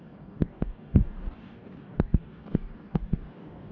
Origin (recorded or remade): remade